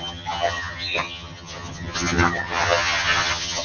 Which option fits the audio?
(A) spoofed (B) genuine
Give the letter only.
A